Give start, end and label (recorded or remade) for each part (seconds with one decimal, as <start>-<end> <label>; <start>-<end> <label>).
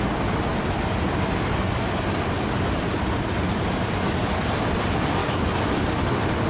0.0-5.2 recorded; 5.2-5.7 remade; 5.7-6.5 recorded